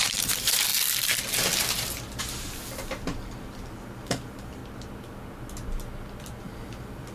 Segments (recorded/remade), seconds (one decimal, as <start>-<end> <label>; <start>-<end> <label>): 0.0-0.7 remade; 0.7-2.2 recorded; 2.2-4.6 remade; 4.6-6.4 recorded; 6.4-7.1 remade